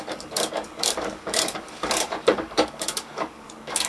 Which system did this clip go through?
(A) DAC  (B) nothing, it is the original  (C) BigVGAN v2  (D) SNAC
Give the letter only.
A